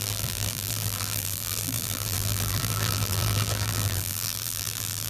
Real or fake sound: fake